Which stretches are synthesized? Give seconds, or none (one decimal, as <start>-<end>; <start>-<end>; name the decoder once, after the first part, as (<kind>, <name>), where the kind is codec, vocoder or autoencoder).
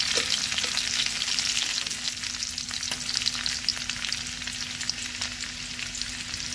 none